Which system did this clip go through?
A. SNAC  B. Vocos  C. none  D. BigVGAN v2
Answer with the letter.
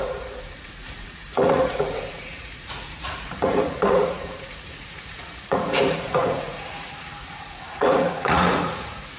B